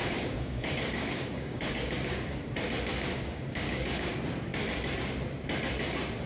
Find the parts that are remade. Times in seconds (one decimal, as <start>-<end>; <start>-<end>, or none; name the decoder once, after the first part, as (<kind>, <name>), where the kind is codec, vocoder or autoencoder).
0.0-2.4 (codec, DAC); 2.9-4.1